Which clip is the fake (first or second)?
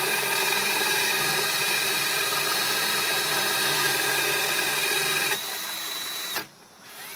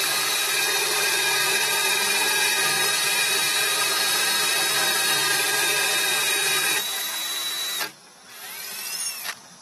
first